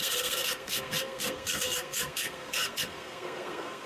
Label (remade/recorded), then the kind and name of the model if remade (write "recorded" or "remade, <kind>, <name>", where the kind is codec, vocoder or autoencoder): remade, codec, SNAC